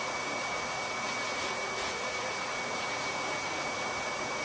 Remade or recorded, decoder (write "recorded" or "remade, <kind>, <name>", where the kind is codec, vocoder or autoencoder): remade, vocoder, Vocos